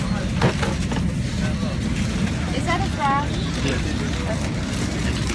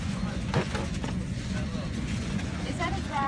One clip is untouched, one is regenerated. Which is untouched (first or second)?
first